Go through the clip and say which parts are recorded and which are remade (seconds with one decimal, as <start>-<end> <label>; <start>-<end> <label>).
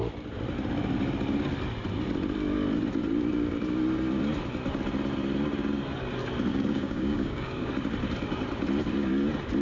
0.0-6.5 recorded; 6.5-7.7 remade; 7.7-9.6 recorded